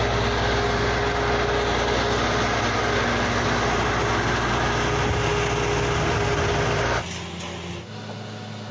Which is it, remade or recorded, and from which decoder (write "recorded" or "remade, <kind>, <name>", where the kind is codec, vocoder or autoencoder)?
recorded